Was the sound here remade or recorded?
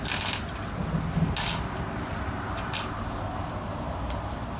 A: recorded